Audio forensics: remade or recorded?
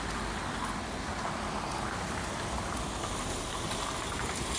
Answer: recorded